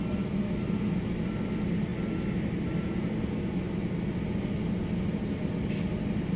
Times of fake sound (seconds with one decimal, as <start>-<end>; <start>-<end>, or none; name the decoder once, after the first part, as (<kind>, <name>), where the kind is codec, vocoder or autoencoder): none